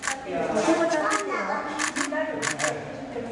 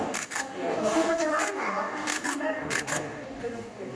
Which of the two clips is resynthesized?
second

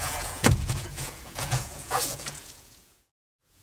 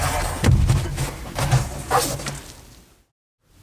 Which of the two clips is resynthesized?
first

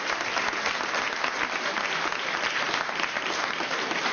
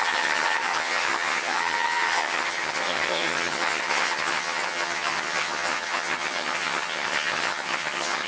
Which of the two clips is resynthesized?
second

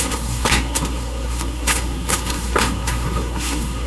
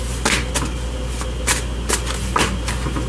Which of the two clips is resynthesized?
first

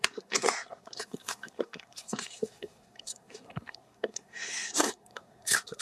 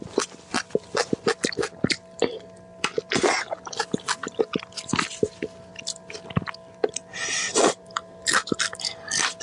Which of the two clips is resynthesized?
first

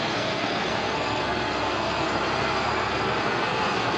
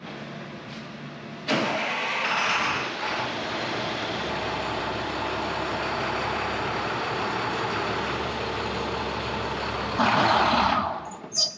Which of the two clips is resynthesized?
first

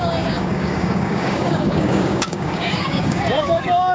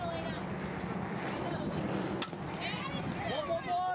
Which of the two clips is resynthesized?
first